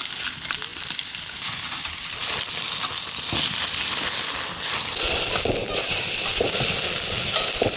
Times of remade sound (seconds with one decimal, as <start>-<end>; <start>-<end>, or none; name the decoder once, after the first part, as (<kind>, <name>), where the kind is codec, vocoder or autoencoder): none